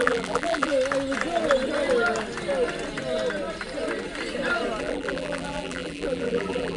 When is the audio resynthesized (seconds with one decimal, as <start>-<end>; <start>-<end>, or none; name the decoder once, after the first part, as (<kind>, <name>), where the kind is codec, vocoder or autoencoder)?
0.0-0.7 (vocoder, BigVGAN v2); 4.8-6.8